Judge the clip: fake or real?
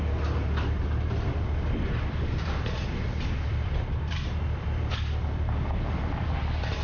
fake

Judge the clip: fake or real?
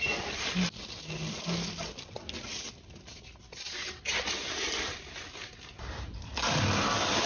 real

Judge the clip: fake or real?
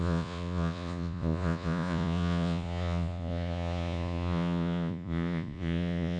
fake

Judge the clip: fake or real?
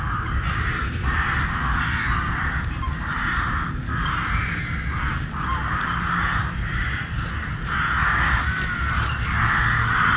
real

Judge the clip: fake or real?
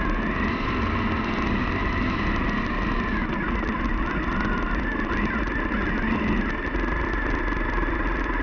real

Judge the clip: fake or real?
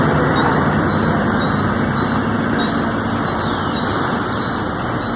real